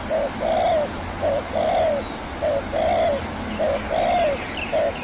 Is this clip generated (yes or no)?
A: no